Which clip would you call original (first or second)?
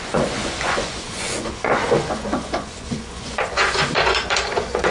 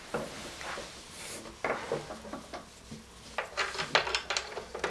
second